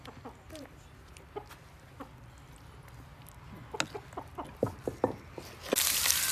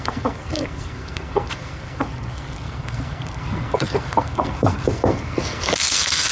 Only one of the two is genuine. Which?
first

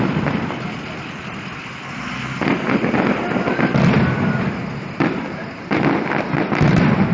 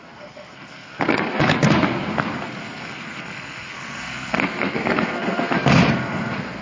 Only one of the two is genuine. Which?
first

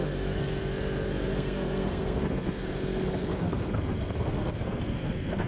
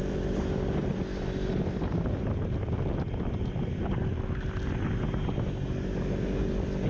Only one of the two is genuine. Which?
second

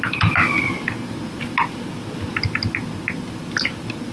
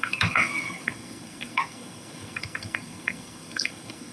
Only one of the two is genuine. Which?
first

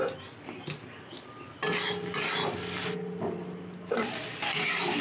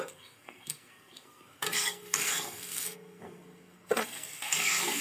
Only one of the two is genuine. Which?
first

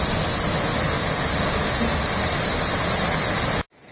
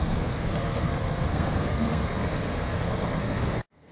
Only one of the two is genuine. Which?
first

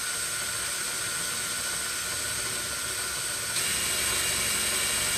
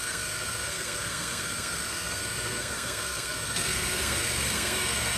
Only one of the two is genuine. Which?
first